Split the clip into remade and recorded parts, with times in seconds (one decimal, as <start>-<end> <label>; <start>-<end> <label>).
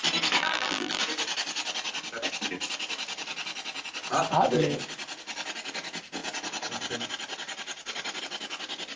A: 0.0-0.4 recorded; 0.4-1.0 remade; 1.0-9.0 recorded